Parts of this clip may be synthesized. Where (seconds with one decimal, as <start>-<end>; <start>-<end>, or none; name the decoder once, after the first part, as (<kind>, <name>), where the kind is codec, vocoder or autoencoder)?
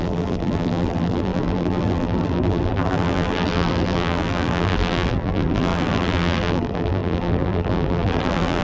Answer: 0.0-8.6 (vocoder, BigVGAN v2)